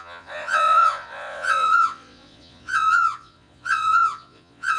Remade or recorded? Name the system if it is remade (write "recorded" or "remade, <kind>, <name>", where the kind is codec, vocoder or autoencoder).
remade, vocoder, Vocos